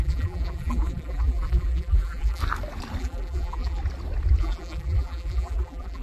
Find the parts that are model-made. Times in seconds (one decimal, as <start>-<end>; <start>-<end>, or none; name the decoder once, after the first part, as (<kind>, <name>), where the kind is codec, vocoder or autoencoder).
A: 0.0-2.4 (vocoder, BigVGAN v2); 3.0-3.8; 4.4-6.0

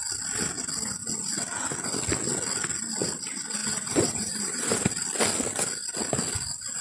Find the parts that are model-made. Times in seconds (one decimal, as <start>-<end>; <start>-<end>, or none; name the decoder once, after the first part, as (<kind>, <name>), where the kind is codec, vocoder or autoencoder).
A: 3.6-4.9 (vocoder, BigVGAN v2)